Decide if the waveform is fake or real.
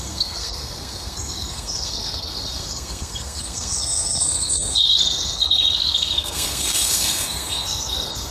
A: fake